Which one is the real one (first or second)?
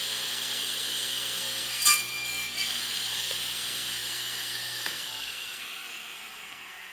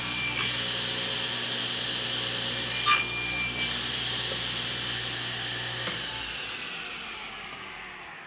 second